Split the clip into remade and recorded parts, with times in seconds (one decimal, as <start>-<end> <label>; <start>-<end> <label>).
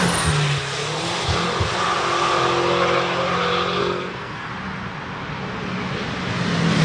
0.0-3.8 recorded; 3.8-4.5 remade; 4.5-6.8 recorded